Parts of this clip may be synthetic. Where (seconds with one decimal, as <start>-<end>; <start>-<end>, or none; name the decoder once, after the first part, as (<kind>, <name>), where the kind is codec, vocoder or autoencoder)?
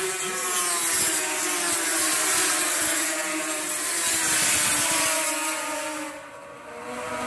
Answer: none